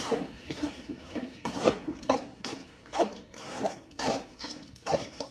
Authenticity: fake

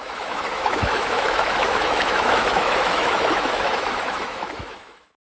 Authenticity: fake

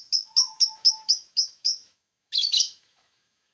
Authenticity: fake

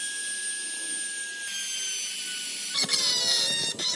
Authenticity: real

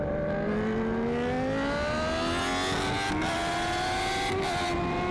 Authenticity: real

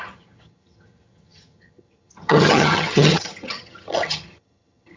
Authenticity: fake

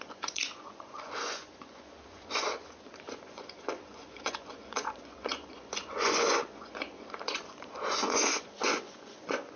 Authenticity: fake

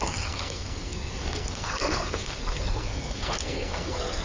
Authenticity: fake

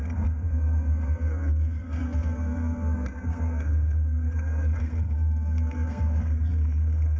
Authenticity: fake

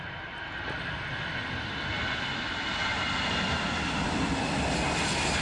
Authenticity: real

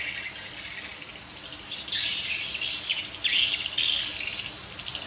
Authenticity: real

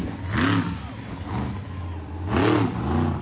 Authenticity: real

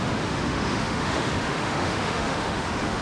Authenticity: fake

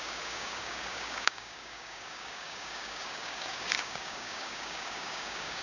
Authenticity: fake